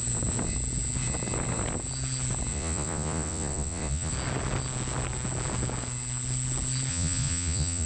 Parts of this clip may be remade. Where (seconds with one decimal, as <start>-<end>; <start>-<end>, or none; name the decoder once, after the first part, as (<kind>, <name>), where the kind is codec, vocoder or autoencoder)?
2.5-4.1 (vocoder, Vocos); 6.9-7.9